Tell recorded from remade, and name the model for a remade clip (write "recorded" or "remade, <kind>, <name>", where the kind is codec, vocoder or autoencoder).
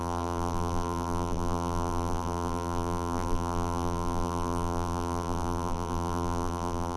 remade, vocoder, BigVGAN v2